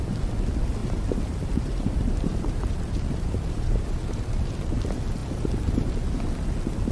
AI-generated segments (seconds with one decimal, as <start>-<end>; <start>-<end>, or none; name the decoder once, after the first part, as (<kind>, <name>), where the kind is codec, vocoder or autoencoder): 0.8-4.7 (vocoder, BigVGAN v2); 5.2-5.9

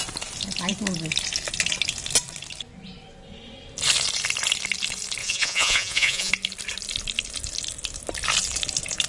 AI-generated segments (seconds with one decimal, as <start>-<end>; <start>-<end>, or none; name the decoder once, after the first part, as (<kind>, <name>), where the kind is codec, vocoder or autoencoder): 5.2-6.3 (vocoder, Vocos)

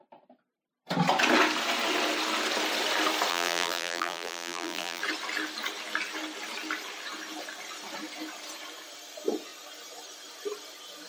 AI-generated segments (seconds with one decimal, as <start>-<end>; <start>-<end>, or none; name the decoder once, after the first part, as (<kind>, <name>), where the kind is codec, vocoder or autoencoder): 3.3-5.0 (vocoder, BigVGAN v2)

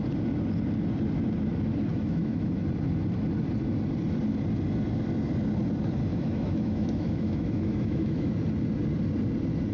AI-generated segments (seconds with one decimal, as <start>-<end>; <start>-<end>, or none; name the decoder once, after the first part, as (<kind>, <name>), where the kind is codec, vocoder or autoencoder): 1.9-2.6 (autoencoder, DAC-VAE); 6.1-8.3

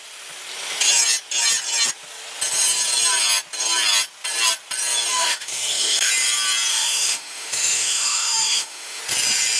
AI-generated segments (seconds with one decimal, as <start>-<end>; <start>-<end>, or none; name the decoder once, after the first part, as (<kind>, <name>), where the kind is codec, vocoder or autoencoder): 5.1-6.1 (autoencoder, DAC-VAE); 6.7-9.0